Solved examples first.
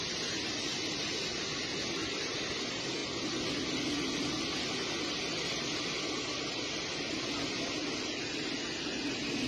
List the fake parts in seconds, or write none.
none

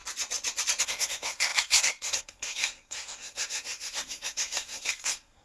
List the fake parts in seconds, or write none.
0.8-5.4 (codec, SNAC)

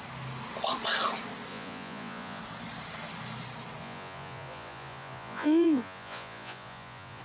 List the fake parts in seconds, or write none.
1.5-2.4 (vocoder, Vocos); 3.8-7.2